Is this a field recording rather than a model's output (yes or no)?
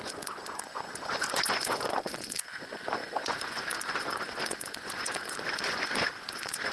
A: no